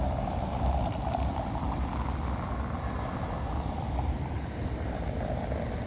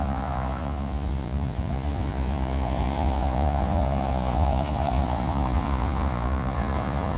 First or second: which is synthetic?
second